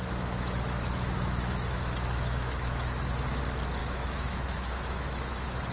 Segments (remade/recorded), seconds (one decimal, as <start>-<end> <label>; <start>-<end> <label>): 0.0-3.4 remade; 3.4-3.8 recorded; 3.8-5.7 remade